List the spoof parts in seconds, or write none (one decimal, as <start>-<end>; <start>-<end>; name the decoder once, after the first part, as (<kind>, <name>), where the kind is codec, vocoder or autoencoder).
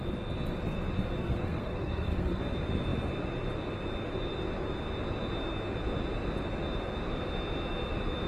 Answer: 1.2-2.4 (codec, SNAC)